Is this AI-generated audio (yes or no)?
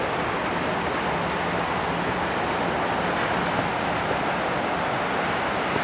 no